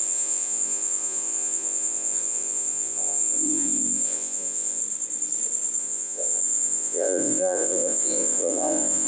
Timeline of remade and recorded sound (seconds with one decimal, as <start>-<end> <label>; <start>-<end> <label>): 0.0-4.8 remade; 4.8-5.8 recorded; 5.8-9.1 remade

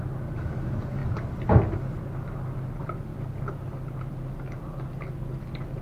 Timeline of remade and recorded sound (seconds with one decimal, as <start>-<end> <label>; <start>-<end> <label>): 0.0-5.8 recorded

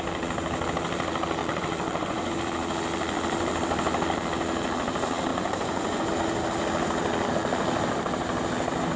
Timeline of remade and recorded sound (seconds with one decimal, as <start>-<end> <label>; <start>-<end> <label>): 0.0-1.4 recorded; 1.4-2.3 remade; 2.3-5.3 recorded; 5.3-6.1 remade; 6.1-9.0 recorded

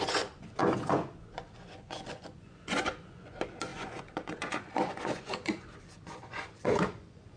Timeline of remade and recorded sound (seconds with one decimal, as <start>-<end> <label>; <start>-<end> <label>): 0.0-7.4 remade

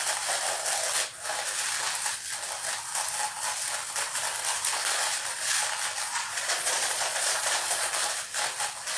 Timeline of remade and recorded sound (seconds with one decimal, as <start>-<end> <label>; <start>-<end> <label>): 0.0-6.1 recorded; 6.1-7.9 remade; 7.9-9.0 recorded

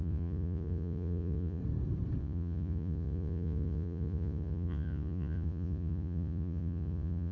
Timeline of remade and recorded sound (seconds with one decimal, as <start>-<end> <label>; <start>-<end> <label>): 0.0-1.6 remade; 1.6-2.2 recorded; 2.2-7.3 remade

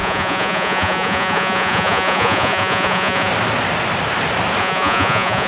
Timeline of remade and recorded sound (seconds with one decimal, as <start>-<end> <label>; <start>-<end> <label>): 0.0-3.3 remade; 3.3-4.6 recorded; 4.6-5.5 remade

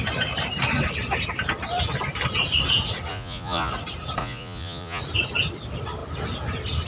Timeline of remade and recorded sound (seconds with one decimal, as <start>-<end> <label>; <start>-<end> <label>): 0.0-3.1 recorded; 3.1-3.7 remade; 3.7-4.2 recorded; 4.2-5.0 remade; 5.0-6.9 recorded